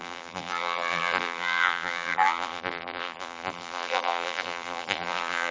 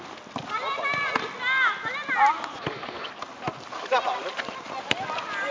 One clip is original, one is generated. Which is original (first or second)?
second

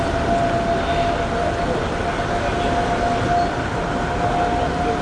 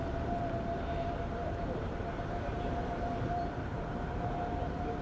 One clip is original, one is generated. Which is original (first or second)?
first